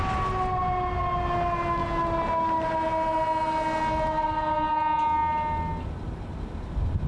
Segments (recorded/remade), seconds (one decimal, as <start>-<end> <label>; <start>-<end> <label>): 0.0-7.1 recorded